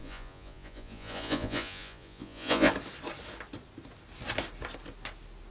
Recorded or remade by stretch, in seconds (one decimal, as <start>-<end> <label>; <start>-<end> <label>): 0.0-2.7 remade; 2.7-5.5 recorded